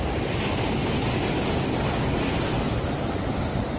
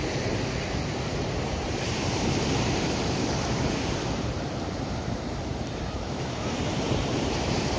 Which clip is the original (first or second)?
first